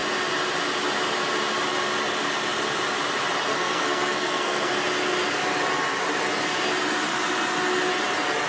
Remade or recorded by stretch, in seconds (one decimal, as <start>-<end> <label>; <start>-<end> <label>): 0.0-3.5 recorded; 3.5-4.7 remade; 4.7-8.5 recorded

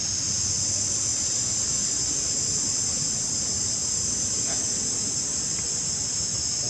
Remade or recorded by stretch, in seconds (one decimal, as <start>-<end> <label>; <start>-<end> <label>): 0.0-1.1 recorded; 1.1-1.9 remade; 1.9-3.8 recorded; 3.8-4.5 remade; 4.5-6.7 recorded

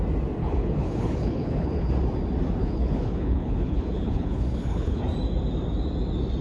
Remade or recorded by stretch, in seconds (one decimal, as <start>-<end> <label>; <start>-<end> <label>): 0.0-0.4 recorded; 0.4-1.9 remade; 1.9-2.6 recorded; 2.6-5.0 remade; 5.0-6.4 recorded

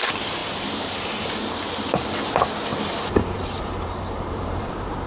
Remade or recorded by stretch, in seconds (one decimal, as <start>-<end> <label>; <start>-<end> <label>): 0.0-0.4 recorded; 0.4-1.5 remade; 1.5-2.7 recorded; 2.7-4.6 remade; 4.6-5.1 recorded